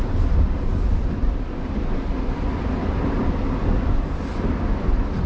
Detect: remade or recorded recorded